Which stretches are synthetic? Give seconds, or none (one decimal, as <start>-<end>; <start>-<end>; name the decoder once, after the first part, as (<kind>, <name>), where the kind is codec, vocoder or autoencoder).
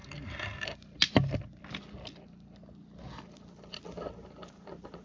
none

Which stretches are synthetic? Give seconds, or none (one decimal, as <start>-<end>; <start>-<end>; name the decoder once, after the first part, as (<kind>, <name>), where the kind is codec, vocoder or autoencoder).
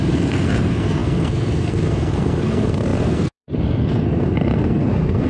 0.0-5.3 (codec, SNAC)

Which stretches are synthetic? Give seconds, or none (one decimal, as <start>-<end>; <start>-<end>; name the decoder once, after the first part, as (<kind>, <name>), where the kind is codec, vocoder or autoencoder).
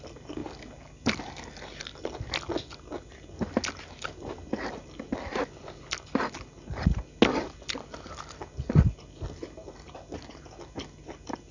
none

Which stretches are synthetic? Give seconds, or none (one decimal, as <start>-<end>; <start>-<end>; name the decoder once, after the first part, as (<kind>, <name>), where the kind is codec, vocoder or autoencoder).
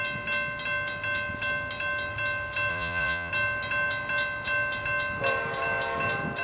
2.7-3.3 (vocoder, Vocos)